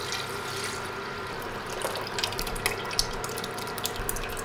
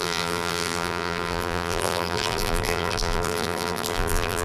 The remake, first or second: second